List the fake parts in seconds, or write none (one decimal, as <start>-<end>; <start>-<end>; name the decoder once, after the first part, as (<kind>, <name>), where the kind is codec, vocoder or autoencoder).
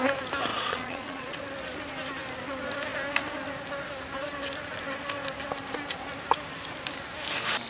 0.5-1.4 (vocoder, Vocos)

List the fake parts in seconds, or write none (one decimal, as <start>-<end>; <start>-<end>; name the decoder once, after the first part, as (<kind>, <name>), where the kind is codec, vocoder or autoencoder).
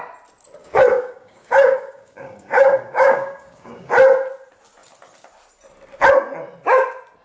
0.6-3.9 (codec, DAC)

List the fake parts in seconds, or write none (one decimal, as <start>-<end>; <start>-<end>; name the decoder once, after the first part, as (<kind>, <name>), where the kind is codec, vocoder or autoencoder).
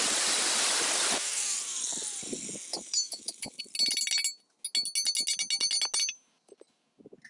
2.7-3.6 (autoencoder, DAC-VAE)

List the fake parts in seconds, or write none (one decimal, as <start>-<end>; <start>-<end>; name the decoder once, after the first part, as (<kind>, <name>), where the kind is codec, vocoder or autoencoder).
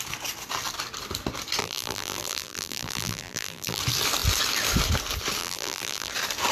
1.6-3.8 (vocoder, BigVGAN v2); 5.4-6.1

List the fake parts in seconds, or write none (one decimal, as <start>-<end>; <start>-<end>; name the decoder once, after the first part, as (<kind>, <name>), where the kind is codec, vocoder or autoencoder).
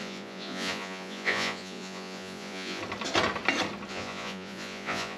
0.0-2.8 (vocoder, Vocos); 3.9-5.2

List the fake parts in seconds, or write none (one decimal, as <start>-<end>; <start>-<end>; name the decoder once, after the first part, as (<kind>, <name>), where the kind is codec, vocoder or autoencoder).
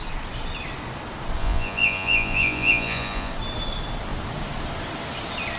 1.4-3.3 (vocoder, Vocos)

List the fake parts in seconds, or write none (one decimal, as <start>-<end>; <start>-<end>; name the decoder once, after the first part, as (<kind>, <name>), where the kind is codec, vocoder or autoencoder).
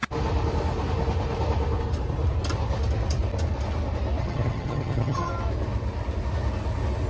4.2-5.3 (vocoder, HiFi-GAN)